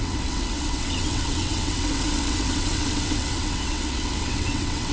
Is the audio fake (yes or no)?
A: yes